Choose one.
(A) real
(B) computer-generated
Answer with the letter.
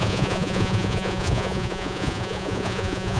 B